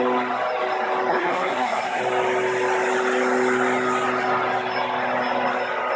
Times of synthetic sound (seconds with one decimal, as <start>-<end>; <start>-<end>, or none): 1.1-2.0